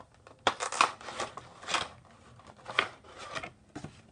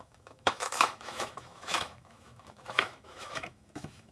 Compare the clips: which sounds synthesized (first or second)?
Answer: second